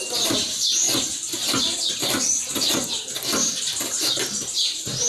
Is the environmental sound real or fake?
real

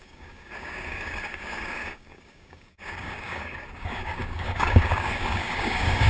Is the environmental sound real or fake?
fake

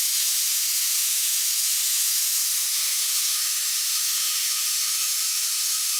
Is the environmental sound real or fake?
fake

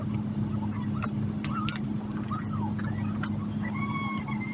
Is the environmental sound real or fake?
real